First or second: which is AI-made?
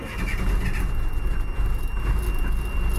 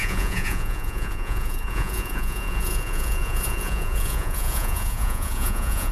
second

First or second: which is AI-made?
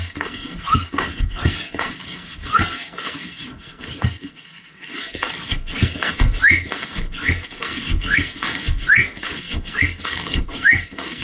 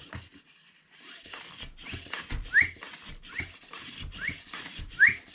first